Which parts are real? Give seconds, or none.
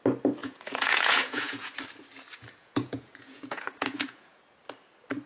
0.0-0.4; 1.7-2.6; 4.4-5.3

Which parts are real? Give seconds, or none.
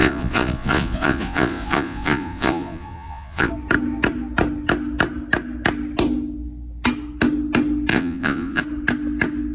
3.5-7.9; 8.6-9.5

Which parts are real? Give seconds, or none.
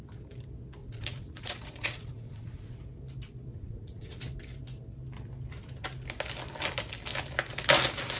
0.0-0.8; 2.8-3.5; 4.2-8.2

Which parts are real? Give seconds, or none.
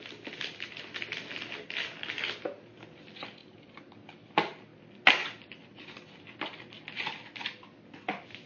0.0-8.5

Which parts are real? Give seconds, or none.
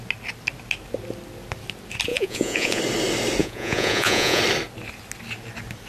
0.0-2.1; 2.8-3.4; 4.4-5.9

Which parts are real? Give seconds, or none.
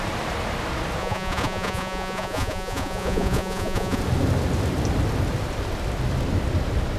0.0-1.0; 4.0-7.0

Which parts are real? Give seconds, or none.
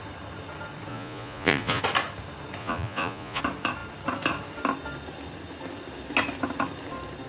0.0-0.9; 1.8-2.6; 3.4-7.3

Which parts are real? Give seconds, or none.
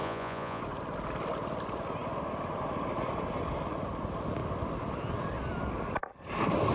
0.6-6.7